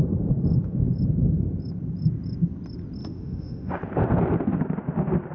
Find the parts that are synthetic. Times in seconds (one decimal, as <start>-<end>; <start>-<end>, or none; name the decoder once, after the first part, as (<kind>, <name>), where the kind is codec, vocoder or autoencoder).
3.0-3.7 (autoencoder, DAC-VAE)